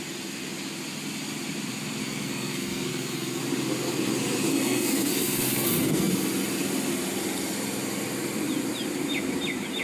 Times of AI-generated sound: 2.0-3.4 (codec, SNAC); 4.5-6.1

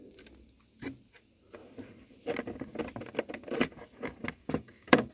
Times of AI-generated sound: 4.4-5.1 (codec, DAC)

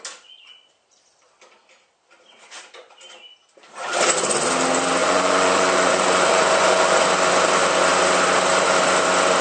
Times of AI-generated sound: 5.0-6.8 (vocoder, Vocos)

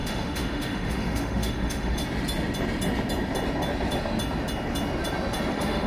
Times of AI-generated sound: 0.0-2.0 (autoencoder, DAC-VAE); 5.5-5.9